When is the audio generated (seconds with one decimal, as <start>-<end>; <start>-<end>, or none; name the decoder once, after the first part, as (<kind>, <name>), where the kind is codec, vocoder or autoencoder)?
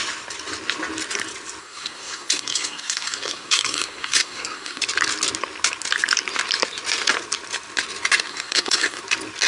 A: 1.6-4.8 (codec, SNAC); 8.3-9.0